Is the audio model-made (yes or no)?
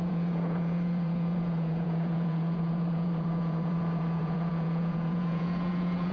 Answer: yes